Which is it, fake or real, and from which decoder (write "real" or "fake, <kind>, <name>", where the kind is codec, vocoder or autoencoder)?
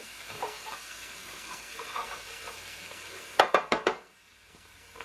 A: fake, codec, SNAC